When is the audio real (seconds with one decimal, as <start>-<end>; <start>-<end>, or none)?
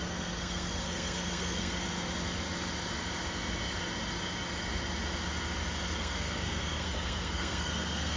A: 1.8-6.0